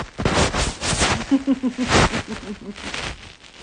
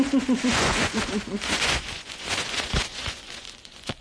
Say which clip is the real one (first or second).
first